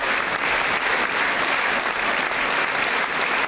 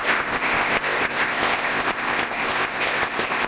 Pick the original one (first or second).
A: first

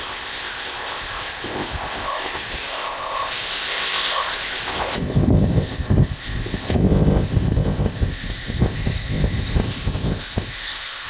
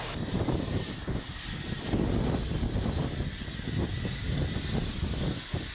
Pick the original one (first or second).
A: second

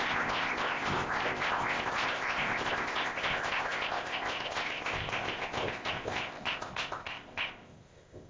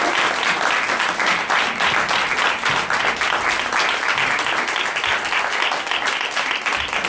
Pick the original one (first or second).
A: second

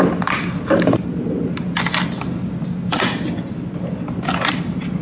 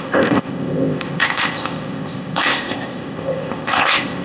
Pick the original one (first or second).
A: first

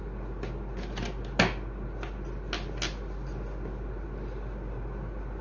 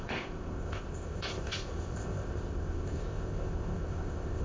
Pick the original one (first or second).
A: first